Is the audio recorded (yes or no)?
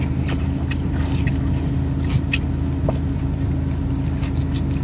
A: yes